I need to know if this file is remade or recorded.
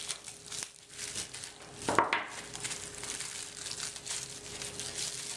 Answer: recorded